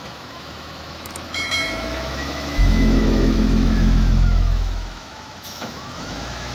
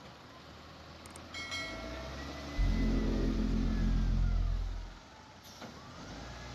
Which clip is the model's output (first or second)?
first